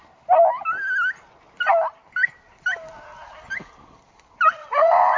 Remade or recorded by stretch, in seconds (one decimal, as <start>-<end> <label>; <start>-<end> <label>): 0.0-4.6 recorded; 4.6-5.2 remade